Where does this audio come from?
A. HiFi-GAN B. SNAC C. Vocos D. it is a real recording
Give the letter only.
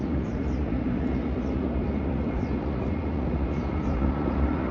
C